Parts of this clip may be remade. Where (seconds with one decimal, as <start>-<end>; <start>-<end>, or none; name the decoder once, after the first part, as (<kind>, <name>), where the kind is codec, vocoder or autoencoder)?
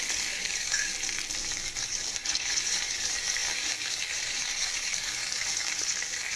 0.0-0.9 (codec, DAC); 1.4-6.4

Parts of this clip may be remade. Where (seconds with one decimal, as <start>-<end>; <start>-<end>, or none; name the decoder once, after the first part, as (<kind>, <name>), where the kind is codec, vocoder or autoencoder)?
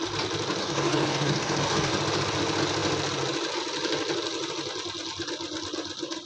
0.6-1.9 (codec, DAC)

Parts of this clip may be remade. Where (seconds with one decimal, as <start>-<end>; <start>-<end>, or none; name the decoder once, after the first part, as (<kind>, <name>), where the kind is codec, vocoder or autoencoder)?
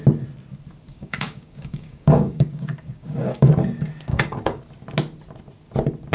0.9-3.5 (codec, DAC); 4.1-4.6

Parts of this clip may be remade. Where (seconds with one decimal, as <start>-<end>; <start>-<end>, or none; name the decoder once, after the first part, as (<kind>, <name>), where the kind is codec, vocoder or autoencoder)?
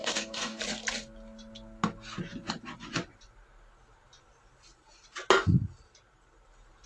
0.0-0.6 (codec, DAC)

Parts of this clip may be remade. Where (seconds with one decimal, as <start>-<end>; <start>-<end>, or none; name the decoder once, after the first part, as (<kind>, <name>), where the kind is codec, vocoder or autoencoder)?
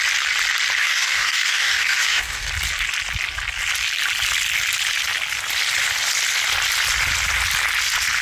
0.8-2.5 (codec, DAC)